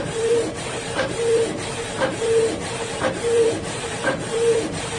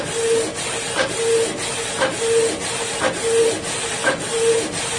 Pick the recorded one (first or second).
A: second